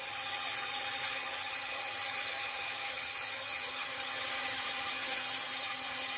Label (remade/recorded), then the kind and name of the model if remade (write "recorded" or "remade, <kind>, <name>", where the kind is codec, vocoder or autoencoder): remade, vocoder, HiFi-GAN